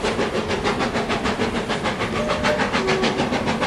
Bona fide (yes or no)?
yes